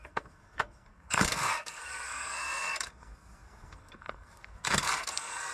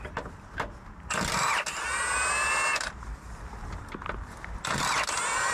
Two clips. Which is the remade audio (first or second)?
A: first